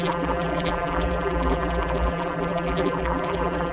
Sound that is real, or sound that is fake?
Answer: fake